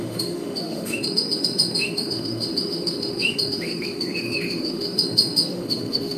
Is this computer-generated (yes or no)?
yes